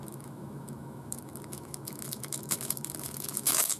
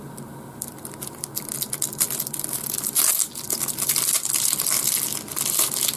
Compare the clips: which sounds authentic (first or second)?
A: second